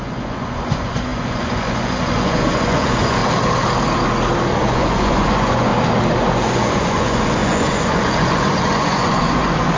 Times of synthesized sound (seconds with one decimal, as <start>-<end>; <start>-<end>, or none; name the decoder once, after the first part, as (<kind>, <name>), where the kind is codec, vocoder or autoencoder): 0.0-3.2 (vocoder, Vocos); 4.6-5.7; 6.2-9.8

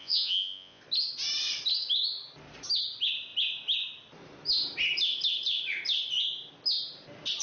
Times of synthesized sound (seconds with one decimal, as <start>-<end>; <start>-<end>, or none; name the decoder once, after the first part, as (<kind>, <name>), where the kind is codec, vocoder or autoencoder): 0.0-0.8 (vocoder, Vocos)

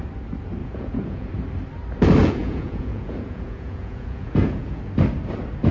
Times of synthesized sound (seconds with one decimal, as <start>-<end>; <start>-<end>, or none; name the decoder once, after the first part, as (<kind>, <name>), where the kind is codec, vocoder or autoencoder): 0.6-1.3 (vocoder, Vocos); 2.2-4.8

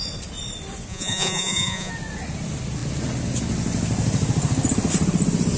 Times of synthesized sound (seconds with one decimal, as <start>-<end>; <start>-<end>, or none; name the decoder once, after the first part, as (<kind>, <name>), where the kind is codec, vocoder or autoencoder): 0.9-1.9 (vocoder, Vocos)

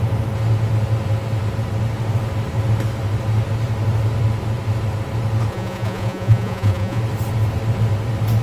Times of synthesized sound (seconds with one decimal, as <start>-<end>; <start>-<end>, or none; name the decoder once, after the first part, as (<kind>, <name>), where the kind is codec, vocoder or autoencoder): 5.5-7.0 (vocoder, Vocos)